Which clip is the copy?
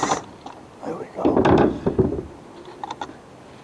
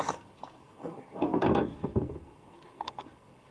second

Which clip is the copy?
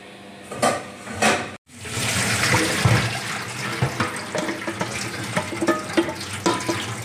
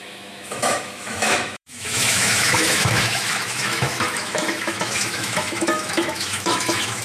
second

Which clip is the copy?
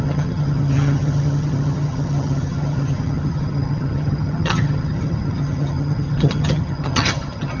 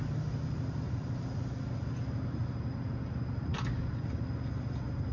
first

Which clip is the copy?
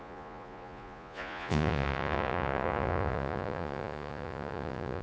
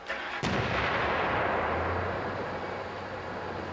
first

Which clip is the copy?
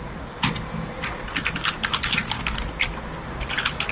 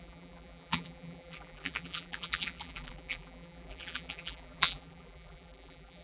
second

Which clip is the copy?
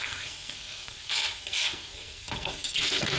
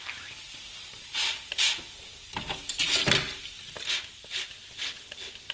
first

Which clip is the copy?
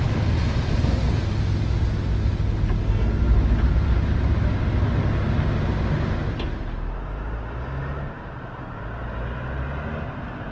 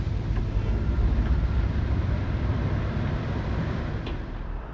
second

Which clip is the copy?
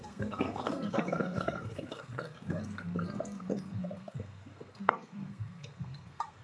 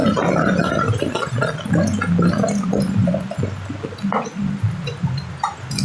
first